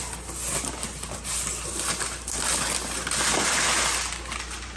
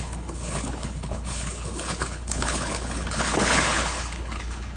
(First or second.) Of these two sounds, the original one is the first